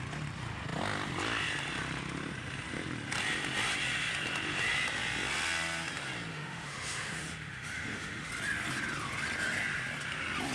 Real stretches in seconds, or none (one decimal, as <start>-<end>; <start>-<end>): 0.0-6.3; 8.3-10.5